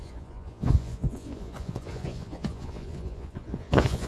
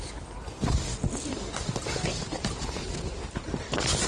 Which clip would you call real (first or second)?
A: second